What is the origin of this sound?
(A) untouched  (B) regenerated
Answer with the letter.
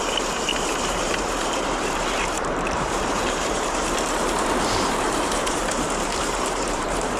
B